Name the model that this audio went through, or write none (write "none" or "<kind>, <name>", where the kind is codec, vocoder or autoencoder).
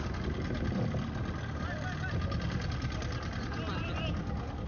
none